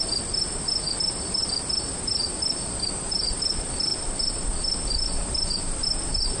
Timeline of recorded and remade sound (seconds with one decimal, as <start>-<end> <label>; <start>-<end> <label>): 0.0-6.4 recorded